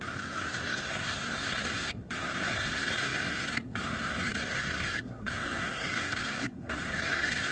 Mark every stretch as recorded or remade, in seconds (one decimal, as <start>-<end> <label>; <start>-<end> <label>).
0.0-7.5 remade